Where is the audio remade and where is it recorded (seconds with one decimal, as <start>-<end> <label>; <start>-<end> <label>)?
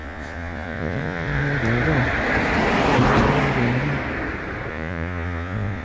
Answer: 0.0-1.4 remade; 1.4-4.7 recorded; 4.7-5.8 remade